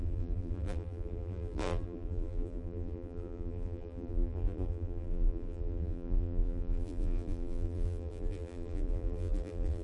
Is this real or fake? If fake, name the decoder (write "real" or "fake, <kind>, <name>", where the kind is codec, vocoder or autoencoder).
fake, vocoder, BigVGAN v2